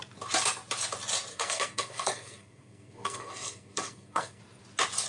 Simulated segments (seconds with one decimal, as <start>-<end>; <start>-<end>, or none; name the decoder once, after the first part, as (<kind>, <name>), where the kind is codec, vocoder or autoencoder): 1.3-4.4 (codec, SNAC)